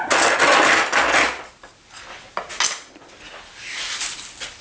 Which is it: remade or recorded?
recorded